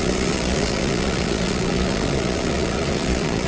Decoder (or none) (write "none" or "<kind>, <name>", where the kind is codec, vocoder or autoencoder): vocoder, Vocos